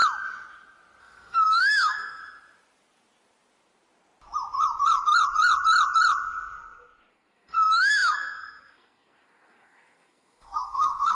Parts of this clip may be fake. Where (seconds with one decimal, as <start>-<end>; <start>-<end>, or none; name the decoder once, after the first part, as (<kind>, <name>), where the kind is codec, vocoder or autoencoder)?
1.0-2.2 (codec, SNAC); 7.1-11.1